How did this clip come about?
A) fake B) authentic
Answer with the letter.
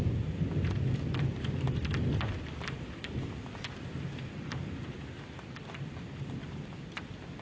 B